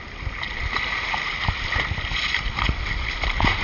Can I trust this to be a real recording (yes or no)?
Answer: yes